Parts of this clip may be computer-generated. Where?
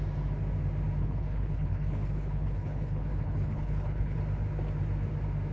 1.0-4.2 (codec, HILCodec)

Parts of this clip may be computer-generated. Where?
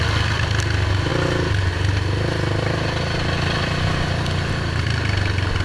none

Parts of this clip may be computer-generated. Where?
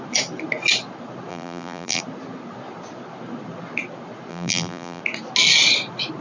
1.3-2.0 (vocoder, BigVGAN v2); 4.3-5.0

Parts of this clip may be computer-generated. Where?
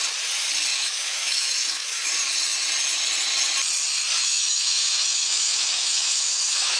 0.7-2.1 (autoencoder, DAC-VAE); 4.2-6.8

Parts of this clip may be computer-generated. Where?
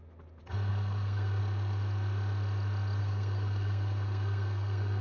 0.7-1.4 (codec, SNAC); 3.0-5.0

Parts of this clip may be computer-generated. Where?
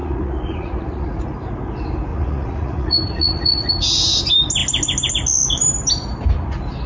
0.0-1.2 (vocoder, Vocos); 2.1-3.7